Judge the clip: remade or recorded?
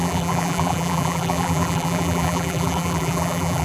remade